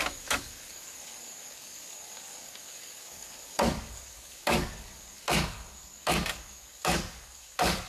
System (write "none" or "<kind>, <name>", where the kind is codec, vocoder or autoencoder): codec, DAC